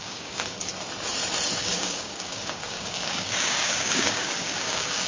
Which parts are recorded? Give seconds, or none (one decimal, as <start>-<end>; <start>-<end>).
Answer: 0.7-1.6